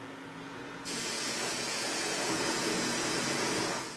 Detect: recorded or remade remade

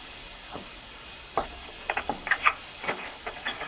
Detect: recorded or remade remade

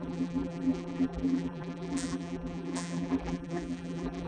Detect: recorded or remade remade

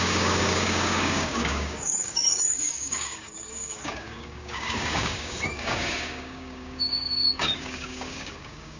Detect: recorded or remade remade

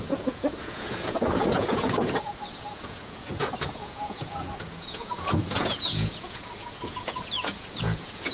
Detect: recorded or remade remade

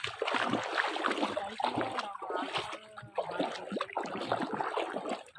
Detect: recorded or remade recorded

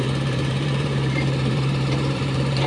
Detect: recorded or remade remade